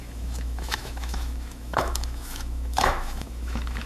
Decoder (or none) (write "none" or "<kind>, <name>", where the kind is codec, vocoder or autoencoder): autoencoder, DAC-VAE